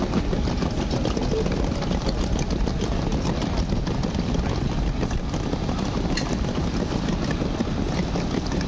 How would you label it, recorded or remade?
recorded